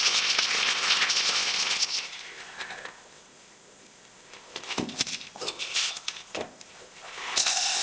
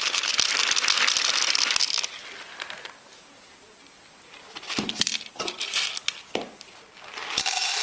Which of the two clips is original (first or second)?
second